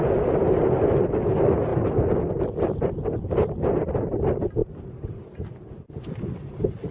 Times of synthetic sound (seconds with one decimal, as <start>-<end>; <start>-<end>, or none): none